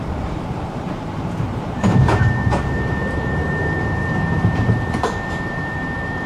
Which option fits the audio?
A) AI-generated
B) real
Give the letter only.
A